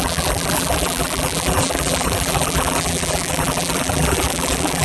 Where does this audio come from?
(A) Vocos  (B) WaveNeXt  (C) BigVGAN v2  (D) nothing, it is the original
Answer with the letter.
C